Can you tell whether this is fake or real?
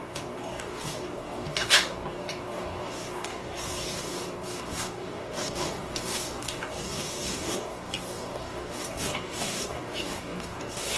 fake